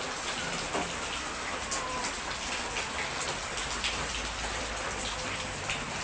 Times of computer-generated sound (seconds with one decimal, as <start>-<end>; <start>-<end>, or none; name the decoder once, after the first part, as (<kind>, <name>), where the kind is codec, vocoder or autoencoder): none